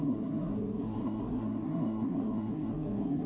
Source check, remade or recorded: remade